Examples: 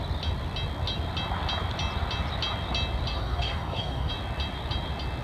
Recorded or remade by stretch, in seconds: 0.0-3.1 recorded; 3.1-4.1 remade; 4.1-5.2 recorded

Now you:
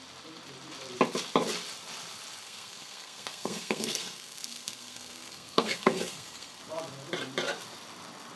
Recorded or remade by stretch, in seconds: 0.0-2.4 recorded; 2.4-6.6 remade; 6.6-8.4 recorded

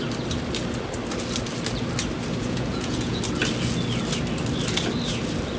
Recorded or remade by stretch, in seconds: 0.0-2.4 recorded; 2.4-3.2 remade; 3.2-5.6 recorded

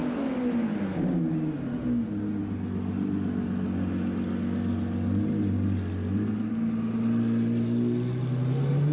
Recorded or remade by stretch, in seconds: 0.0-8.9 recorded

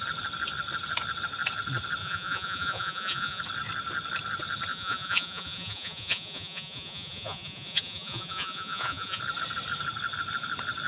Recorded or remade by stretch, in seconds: 0.0-2.0 recorded; 2.0-3.4 remade; 3.4-4.7 recorded; 4.7-9.2 remade; 9.2-10.9 recorded

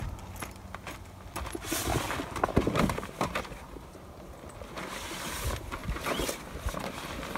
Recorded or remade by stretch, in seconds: 0.0-1.9 recorded; 1.9-3.4 remade; 3.4-5.8 recorded; 5.8-6.3 remade; 6.3-7.4 recorded

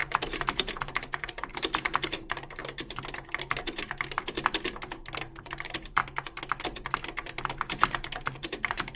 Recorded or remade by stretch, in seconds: 0.0-2.6 remade; 2.6-5.2 recorded; 5.2-6.0 remade; 6.0-7.4 recorded; 7.4-9.0 remade

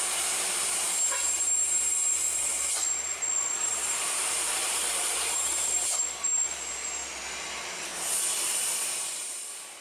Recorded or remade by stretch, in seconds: 0.0-2.5 recorded; 2.5-3.2 remade; 3.2-3.8 recorded; 3.8-6.0 remade; 6.0-9.8 recorded